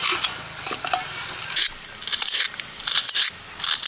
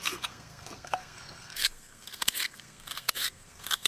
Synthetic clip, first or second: second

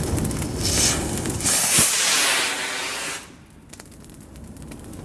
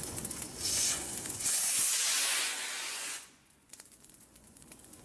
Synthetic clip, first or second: second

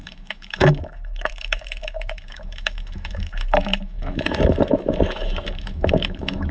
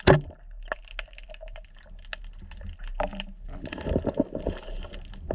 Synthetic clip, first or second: first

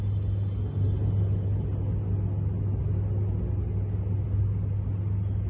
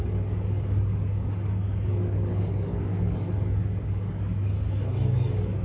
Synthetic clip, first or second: second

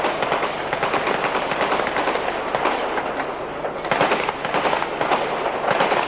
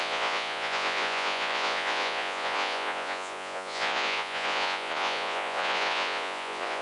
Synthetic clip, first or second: second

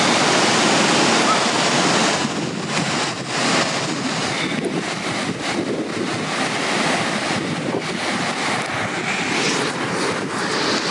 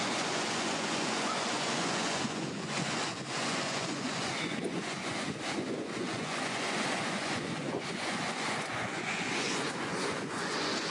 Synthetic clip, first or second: second